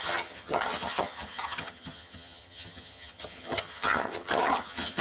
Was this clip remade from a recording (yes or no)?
yes